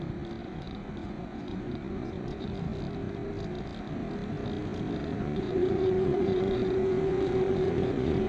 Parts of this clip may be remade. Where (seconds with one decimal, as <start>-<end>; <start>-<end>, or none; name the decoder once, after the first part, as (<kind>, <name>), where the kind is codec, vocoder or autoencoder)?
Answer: 0.4-2.5 (vocoder, Vocos); 5.0-8.3